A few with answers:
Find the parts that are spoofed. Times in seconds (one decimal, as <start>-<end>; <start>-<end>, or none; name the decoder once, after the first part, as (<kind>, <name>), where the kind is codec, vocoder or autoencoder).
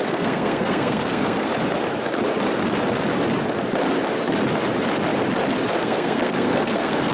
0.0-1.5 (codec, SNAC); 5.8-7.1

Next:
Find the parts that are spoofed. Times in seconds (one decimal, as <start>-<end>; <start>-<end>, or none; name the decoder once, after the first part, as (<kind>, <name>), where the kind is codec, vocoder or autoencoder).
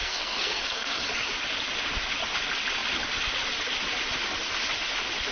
0.0-1.0 (codec, SNAC)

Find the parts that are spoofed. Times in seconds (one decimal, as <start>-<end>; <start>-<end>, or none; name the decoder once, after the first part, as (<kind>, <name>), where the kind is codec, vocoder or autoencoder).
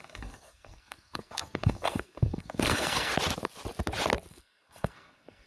0.0-3.1 (codec, SNAC); 4.3-5.5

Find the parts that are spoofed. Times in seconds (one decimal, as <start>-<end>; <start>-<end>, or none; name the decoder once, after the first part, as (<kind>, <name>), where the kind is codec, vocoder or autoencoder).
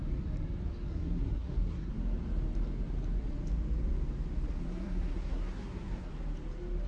0.9-1.9 (codec, SNAC); 4.6-6.1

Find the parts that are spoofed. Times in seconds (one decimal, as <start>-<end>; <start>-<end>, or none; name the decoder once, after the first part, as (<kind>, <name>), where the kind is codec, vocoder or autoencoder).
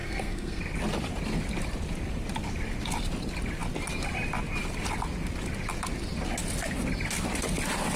0.0-0.6 (codec, SNAC)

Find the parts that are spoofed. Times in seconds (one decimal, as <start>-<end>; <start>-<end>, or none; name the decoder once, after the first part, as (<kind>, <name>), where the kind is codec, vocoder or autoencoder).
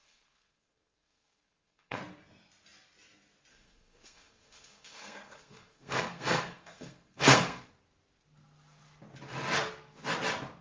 0.0-2.0 (codec, SNAC); 3.5-7.7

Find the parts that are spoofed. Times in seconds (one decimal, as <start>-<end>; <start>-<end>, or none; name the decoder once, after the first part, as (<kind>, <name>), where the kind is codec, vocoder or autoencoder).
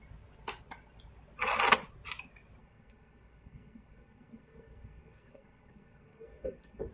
2.6-6.9 (codec, SNAC)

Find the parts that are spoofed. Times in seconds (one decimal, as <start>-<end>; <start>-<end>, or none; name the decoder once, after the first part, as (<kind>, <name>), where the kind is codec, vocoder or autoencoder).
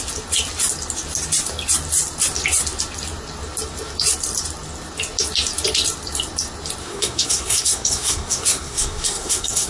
6.8-9.7 (codec, SNAC)